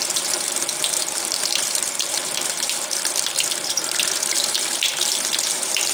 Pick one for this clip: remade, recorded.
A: remade